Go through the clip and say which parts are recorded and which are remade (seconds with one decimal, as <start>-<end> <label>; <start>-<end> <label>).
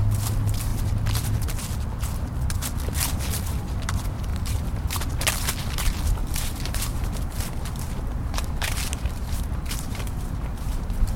0.0-4.3 recorded; 4.3-5.0 remade; 5.0-6.2 recorded; 6.2-11.2 remade